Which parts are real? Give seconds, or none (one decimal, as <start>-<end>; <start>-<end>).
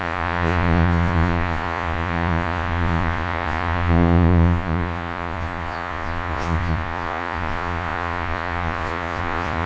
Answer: none